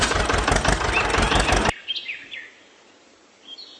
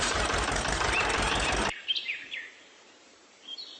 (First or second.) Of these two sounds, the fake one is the second